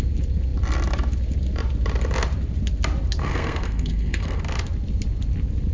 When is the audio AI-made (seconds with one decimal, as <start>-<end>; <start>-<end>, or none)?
3.2-4.4

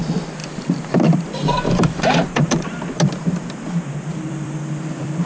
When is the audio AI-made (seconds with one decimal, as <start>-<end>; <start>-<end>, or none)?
0.4-2.0; 4.1-5.3